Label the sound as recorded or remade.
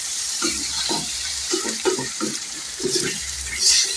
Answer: remade